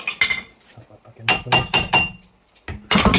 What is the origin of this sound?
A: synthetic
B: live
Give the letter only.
B